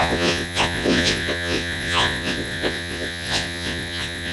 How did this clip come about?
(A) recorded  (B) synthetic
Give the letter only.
B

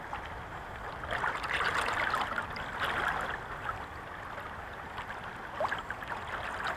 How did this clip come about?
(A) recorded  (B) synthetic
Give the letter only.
A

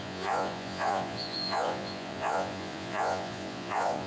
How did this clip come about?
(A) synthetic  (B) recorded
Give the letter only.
A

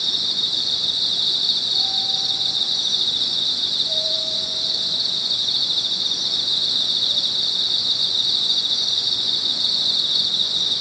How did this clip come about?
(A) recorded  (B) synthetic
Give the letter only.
B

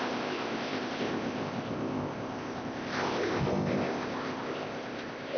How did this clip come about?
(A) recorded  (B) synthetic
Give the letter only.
B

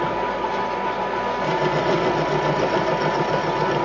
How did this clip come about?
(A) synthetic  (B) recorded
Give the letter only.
B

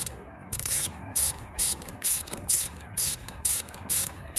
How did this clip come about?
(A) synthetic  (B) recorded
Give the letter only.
A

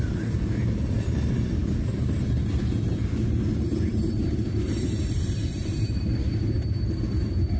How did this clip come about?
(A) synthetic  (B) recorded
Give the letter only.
A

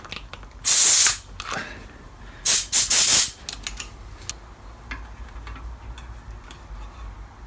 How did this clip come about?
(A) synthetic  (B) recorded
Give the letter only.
B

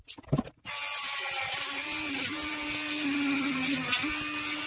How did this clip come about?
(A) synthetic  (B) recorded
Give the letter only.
B